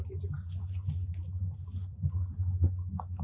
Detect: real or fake real